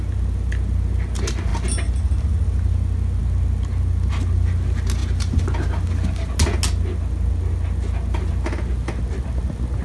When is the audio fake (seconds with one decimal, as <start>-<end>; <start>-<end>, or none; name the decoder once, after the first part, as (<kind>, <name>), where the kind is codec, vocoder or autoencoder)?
none